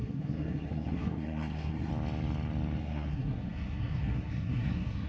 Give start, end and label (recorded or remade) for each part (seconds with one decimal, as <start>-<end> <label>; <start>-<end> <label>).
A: 0.0-1.9 remade; 1.9-2.8 recorded; 2.8-5.1 remade